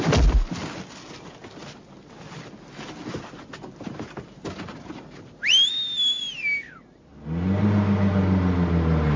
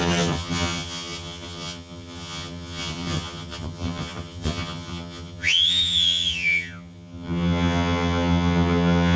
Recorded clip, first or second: first